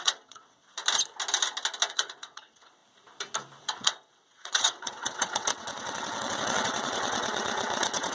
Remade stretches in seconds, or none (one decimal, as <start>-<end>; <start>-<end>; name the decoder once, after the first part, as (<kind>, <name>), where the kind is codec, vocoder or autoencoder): 0.0-0.8 (vocoder, WaveNeXt); 1.9-2.8; 3.6-8.1